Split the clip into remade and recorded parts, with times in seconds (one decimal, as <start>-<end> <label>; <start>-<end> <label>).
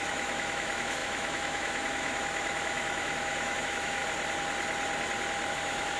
0.0-4.0 remade; 4.0-5.5 recorded; 5.5-6.0 remade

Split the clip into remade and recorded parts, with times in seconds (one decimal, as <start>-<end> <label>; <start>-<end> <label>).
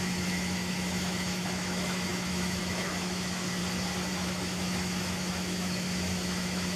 0.0-3.6 remade; 3.6-4.1 recorded; 4.1-6.8 remade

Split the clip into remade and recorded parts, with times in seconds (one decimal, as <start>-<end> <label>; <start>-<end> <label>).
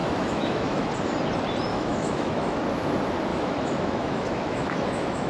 0.0-0.9 remade; 0.9-1.7 recorded; 1.7-2.6 remade; 2.6-3.3 recorded; 3.3-5.3 remade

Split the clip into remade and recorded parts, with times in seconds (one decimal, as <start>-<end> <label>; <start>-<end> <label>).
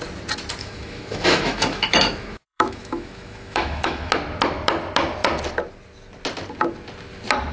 0.0-0.6 recorded; 0.6-4.1 remade; 4.1-7.5 recorded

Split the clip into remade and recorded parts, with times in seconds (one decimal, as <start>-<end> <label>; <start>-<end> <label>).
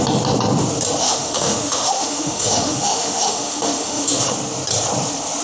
0.0-1.0 recorded; 1.0-4.2 remade; 4.2-5.4 recorded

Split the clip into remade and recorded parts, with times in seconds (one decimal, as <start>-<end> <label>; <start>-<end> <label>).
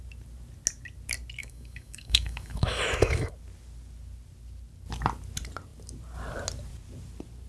0.0-1.4 recorded; 1.4-3.3 remade; 3.3-7.5 recorded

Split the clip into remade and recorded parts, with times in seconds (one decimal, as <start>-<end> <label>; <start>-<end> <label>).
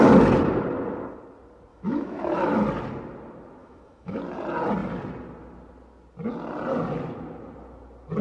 0.0-1.7 recorded; 1.7-2.6 remade; 2.6-3.6 recorded; 3.6-4.2 remade; 4.2-8.2 recorded